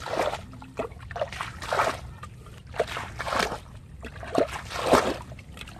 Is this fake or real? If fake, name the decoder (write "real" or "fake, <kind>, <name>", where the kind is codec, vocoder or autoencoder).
real